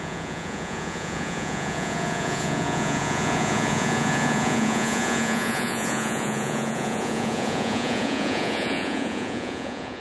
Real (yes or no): no